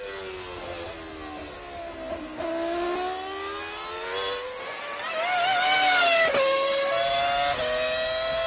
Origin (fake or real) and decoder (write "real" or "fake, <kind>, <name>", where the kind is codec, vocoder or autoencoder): real